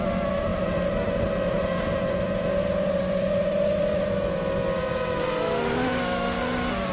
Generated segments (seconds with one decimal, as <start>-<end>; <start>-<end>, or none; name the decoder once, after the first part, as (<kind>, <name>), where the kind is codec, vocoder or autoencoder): none